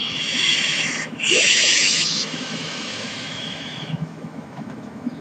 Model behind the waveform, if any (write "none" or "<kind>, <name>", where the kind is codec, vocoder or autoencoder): autoencoder, DAC-VAE